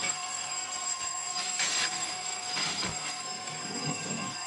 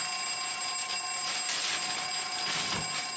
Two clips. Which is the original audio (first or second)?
second